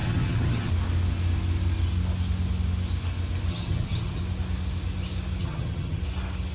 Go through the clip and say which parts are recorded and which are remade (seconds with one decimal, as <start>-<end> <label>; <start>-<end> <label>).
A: 0.0-0.7 remade; 0.7-3.5 recorded; 3.5-4.2 remade; 4.2-5.4 recorded; 5.4-6.0 remade; 6.0-6.5 recorded